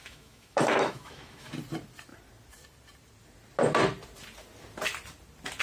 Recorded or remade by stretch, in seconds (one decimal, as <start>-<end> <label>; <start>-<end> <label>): 0.0-1.5 remade; 1.5-5.6 recorded

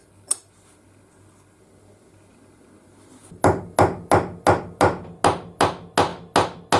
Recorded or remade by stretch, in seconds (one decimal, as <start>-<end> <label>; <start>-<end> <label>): 0.0-6.8 recorded

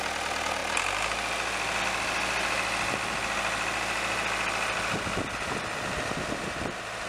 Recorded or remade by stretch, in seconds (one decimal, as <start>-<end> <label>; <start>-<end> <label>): 0.0-7.1 recorded

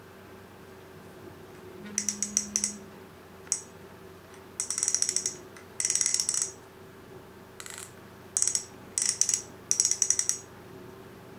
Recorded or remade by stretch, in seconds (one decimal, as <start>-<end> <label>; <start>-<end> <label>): 0.0-11.4 recorded

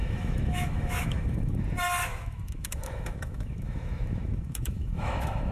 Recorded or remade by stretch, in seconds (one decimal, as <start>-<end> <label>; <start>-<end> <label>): 0.0-1.6 remade; 1.6-2.0 recorded; 2.0-5.5 remade

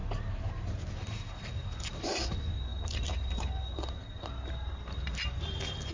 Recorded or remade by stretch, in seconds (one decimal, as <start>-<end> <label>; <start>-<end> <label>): 0.0-5.9 recorded

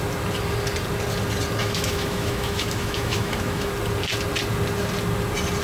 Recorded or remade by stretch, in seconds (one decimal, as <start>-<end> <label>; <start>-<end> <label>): 0.0-1.6 recorded; 1.6-3.7 remade; 3.7-5.6 recorded